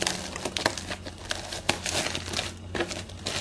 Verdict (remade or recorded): recorded